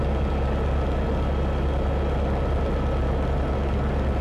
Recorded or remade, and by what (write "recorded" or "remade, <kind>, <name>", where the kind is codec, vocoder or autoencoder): recorded